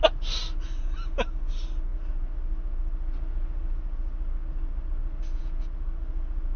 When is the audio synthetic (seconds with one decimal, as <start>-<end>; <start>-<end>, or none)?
none